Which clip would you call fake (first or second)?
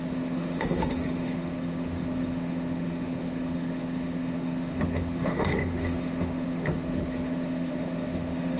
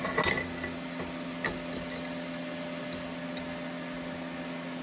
first